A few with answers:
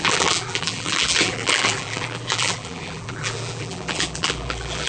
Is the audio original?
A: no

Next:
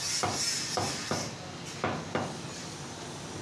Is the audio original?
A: yes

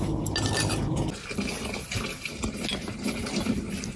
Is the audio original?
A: yes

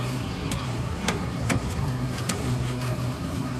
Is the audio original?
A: no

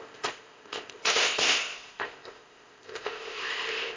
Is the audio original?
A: no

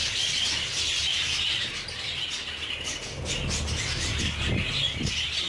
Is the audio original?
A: yes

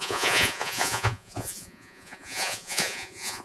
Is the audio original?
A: no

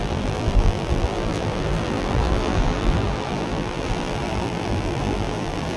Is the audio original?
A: no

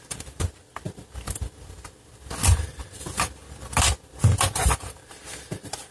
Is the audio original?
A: no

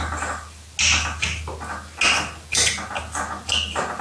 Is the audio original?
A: yes